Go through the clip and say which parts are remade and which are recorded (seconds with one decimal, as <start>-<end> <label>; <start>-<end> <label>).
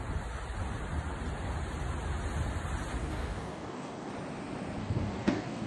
0.0-3.0 recorded; 3.0-4.1 remade; 4.1-4.8 recorded; 4.8-5.7 remade